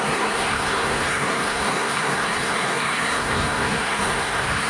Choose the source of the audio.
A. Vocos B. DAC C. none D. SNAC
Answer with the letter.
D